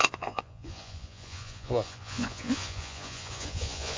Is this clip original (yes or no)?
no